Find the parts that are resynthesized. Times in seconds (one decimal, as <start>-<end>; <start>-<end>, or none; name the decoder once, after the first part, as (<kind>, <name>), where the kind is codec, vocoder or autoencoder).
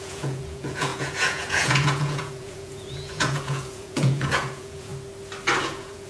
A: 0.0-4.9 (vocoder, Vocos); 5.6-6.1